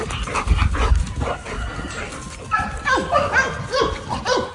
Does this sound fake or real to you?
real